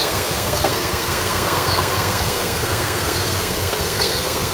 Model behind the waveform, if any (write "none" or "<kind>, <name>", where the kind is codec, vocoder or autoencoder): codec, SNAC